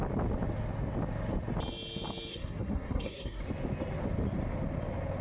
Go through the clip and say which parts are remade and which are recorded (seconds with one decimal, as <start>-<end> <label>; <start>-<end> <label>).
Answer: 0.0-2.3 recorded; 2.3-3.4 remade; 3.4-5.2 recorded